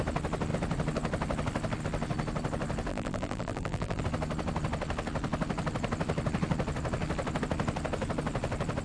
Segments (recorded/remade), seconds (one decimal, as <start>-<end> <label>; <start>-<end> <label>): 0.0-2.9 recorded; 2.9-4.0 remade; 4.0-8.8 recorded